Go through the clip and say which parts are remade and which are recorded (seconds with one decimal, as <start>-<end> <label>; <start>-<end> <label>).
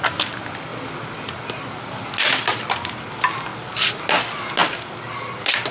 0.0-5.7 recorded